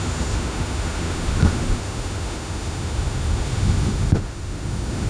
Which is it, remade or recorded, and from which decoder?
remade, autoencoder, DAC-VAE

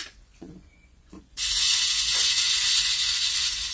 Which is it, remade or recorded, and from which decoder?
remade, vocoder, Vocos